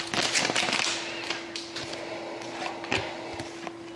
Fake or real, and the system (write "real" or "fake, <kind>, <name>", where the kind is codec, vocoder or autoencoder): real